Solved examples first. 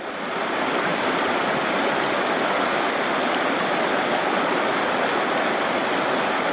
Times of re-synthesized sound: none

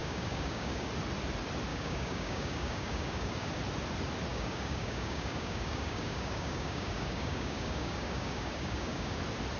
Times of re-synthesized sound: 0.0-0.9 (codec, DAC); 1.7-3.5; 4.3-9.2